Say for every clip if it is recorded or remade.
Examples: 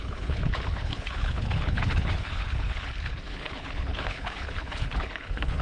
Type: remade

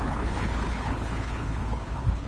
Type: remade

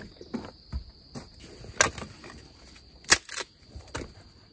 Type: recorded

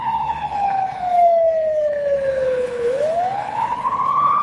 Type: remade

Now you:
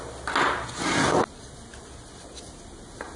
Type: recorded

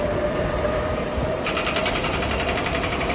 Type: recorded